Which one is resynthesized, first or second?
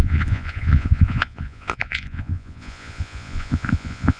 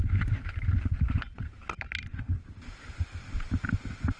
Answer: first